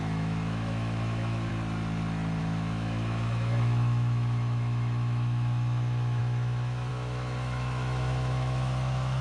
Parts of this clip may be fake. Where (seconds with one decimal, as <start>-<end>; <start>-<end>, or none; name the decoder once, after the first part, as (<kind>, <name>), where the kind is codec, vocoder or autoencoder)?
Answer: 0.0-1.5 (autoencoder, DAC-VAE); 2.4-9.2